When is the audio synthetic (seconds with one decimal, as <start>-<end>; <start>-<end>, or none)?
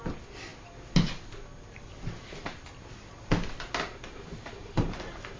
4.6-5.4